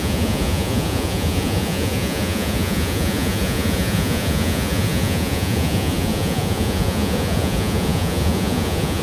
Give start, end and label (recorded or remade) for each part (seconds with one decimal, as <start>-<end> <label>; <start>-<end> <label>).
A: 0.0-9.0 remade